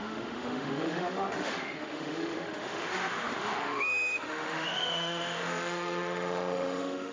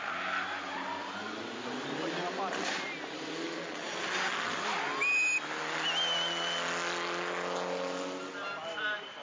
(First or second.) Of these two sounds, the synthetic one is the first